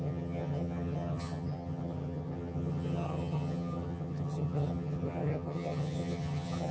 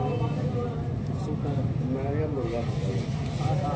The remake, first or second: first